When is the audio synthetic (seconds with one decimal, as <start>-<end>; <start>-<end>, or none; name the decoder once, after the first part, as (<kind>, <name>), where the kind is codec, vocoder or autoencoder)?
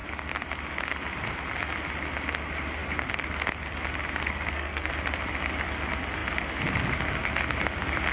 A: 4.2-4.9 (codec, SNAC)